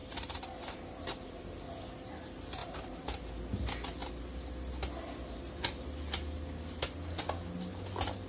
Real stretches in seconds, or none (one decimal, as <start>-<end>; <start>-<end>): 1.0-2.6; 3.2-8.3